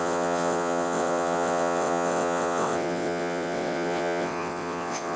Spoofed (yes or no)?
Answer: yes